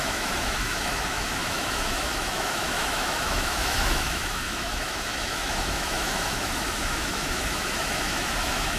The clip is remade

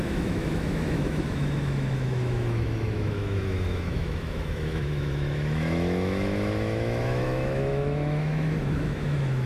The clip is remade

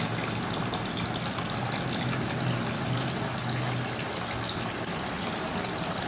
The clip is recorded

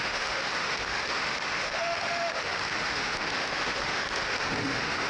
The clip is remade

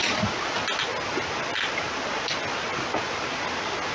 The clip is recorded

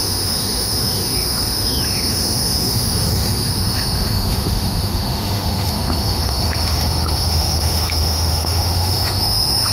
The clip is remade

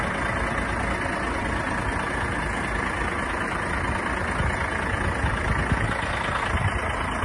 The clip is recorded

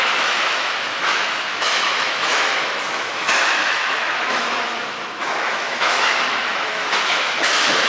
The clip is remade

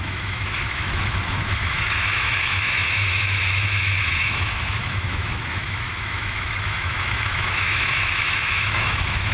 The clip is remade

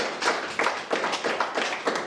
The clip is recorded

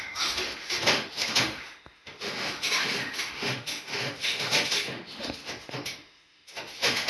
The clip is remade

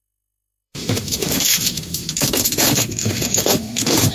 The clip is remade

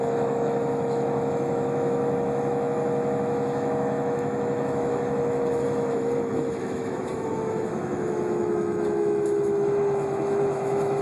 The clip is remade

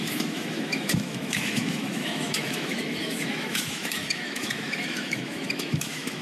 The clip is remade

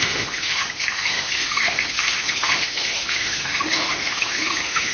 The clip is remade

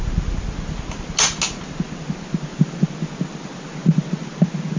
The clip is recorded